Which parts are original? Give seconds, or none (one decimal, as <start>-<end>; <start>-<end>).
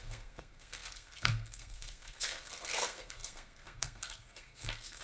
none